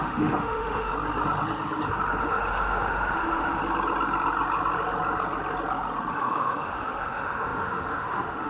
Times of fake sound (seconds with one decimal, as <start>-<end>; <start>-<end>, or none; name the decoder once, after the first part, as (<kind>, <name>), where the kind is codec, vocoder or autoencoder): 0.0-0.9 (autoencoder, DAC-VAE); 2.2-3.6; 6.1-8.5